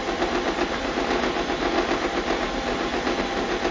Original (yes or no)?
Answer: yes